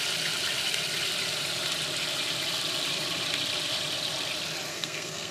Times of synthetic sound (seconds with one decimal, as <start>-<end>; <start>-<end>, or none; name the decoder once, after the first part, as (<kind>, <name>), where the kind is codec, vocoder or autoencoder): 4.7-5.3 (codec, SNAC)